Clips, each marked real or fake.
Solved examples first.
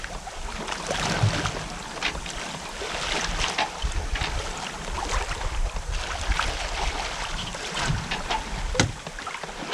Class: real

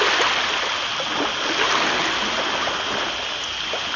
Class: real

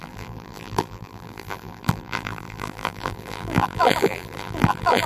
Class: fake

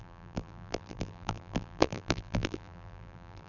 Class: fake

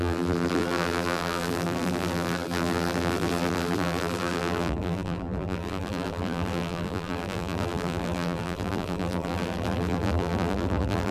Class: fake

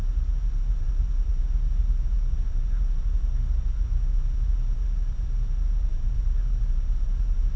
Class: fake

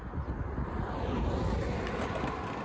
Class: real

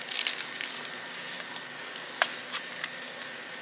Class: real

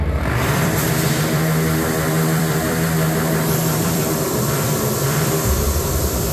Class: fake